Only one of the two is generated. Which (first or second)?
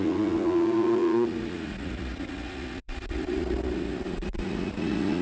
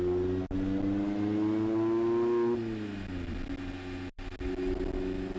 first